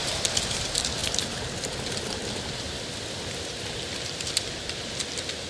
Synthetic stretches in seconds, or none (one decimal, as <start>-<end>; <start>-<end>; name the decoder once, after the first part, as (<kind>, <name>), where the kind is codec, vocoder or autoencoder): none